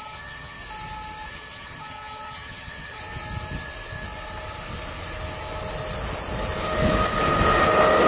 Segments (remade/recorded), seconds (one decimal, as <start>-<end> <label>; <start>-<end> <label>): 0.0-0.6 remade; 0.6-1.3 recorded; 1.3-3.0 remade; 3.0-8.1 recorded